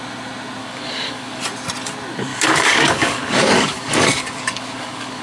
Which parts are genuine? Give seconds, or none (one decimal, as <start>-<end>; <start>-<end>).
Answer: 0.0-0.6; 1.4-2.3